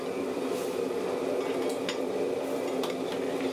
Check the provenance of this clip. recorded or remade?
recorded